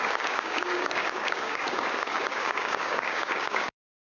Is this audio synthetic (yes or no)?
yes